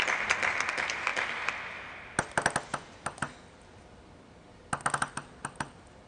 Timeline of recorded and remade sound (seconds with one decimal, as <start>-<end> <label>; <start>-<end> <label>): 0.0-6.1 recorded